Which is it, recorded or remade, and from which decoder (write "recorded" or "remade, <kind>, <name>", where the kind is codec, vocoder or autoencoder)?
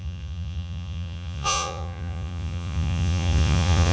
remade, vocoder, Vocos